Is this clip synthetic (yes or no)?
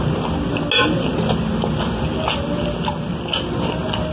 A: no